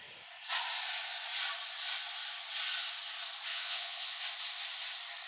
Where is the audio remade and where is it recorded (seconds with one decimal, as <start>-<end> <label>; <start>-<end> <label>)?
0.0-3.5 recorded; 3.5-4.2 remade; 4.2-5.3 recorded